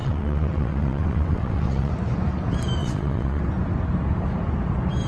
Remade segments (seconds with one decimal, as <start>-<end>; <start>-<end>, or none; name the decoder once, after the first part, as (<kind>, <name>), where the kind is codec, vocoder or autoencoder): 0.0-1.9 (vocoder, WaveNeXt); 2.8-3.4